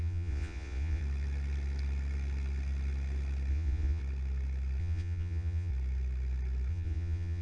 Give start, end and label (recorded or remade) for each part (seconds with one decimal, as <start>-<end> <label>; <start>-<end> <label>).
0.0-1.0 remade; 1.0-3.5 recorded; 3.5-4.0 remade; 4.0-4.8 recorded; 4.8-5.7 remade; 5.7-6.7 recorded; 6.7-7.4 remade